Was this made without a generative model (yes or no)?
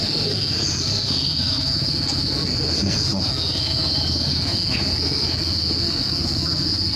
no